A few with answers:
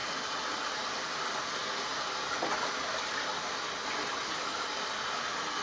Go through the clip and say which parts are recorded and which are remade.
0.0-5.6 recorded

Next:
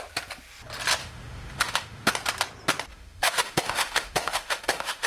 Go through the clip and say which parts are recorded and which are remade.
0.0-1.0 recorded; 1.0-2.1 remade; 2.1-2.9 recorded; 2.9-5.1 remade

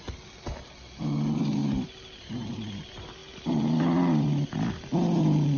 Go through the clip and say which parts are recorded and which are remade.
0.0-3.2 recorded; 3.2-5.6 remade

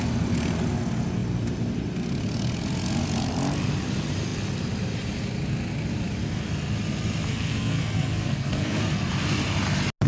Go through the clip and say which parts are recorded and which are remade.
0.0-7.3 recorded; 7.3-8.8 remade; 8.8-10.1 recorded

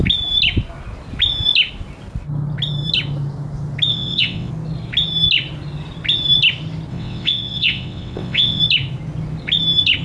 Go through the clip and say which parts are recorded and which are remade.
0.0-3.9 recorded; 3.9-4.5 remade; 4.5-6.9 recorded; 6.9-8.6 remade; 8.6-10.0 recorded